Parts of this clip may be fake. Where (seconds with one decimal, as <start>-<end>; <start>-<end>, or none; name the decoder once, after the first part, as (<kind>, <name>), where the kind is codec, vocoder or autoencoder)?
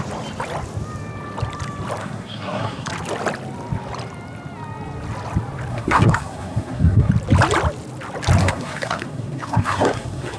2.0-2.9 (codec, SNAC); 5.7-7.1; 8.4-10.4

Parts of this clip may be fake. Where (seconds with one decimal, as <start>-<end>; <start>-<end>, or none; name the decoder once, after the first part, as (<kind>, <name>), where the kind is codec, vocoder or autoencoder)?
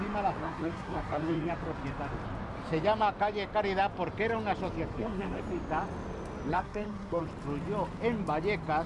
0.4-1.5 (codec, SNAC); 4.9-5.4; 6.5-7.2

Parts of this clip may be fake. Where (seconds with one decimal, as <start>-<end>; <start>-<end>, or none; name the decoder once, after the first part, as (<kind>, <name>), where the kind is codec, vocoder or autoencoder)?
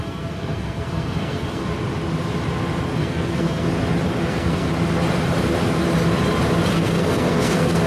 0.0-1.6 (codec, SNAC); 3.0-3.7; 4.2-4.7; 6.7-7.9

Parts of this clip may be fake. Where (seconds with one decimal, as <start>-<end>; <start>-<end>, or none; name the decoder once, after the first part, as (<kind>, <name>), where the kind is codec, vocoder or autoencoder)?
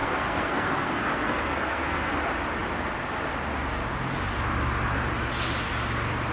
0.0-2.1 (codec, SNAC)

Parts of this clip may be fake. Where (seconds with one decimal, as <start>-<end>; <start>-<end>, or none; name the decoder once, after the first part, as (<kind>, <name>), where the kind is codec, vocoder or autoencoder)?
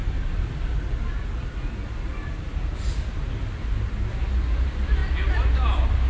none